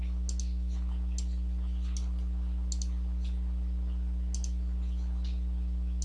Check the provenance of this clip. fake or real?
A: real